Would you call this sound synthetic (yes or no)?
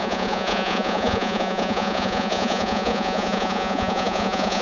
yes